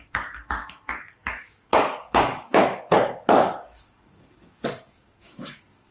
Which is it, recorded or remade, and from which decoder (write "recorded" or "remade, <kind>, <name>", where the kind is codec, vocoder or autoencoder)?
remade, codec, DAC